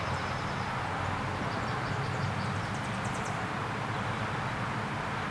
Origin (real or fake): real